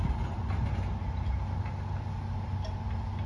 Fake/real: real